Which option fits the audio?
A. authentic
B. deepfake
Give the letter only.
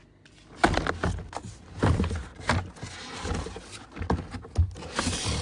A